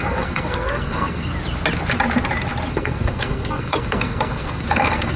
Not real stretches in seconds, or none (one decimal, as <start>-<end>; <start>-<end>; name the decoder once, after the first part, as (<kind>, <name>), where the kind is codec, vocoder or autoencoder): 0.0-1.3 (codec, SNAC); 2.7-5.2